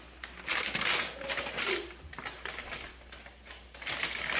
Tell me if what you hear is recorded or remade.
recorded